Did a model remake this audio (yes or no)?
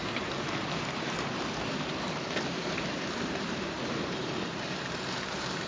yes